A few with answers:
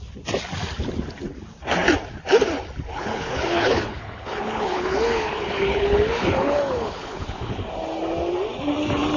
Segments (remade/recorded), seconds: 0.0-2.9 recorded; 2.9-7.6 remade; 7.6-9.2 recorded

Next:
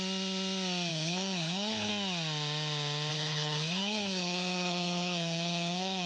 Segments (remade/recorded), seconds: 0.0-0.9 recorded; 0.9-1.9 remade; 1.9-3.1 recorded; 3.1-6.1 remade

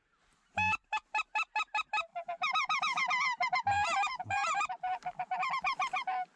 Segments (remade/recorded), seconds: 0.0-2.1 recorded; 2.1-5.5 remade; 5.5-6.4 recorded

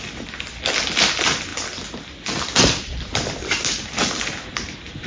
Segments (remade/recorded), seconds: 0.0-5.1 recorded